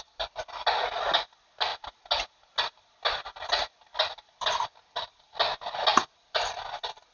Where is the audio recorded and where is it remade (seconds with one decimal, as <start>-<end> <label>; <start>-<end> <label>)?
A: 0.0-5.9 recorded; 5.9-6.5 remade; 6.5-7.1 recorded